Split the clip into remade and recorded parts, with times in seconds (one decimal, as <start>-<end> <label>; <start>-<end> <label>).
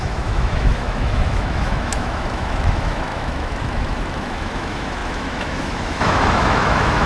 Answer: 0.0-7.1 remade